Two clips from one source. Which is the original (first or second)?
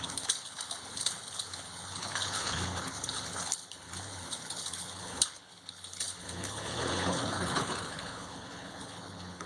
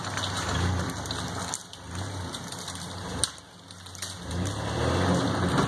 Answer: second